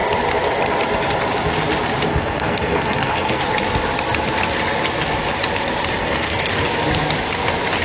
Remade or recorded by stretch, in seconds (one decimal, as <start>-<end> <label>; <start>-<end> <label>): 0.0-2.1 recorded; 2.1-3.4 remade; 3.4-6.0 recorded; 6.0-6.5 remade; 6.5-7.8 recorded